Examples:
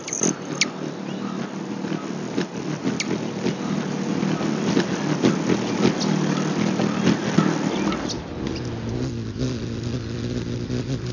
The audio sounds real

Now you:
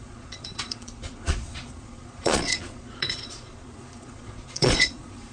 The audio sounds fake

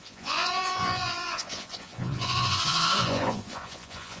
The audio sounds fake